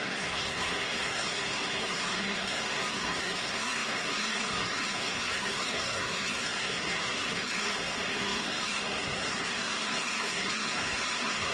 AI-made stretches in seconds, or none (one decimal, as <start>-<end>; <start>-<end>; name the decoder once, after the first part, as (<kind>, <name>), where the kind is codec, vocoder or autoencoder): 0.0-11.5 (codec, SNAC)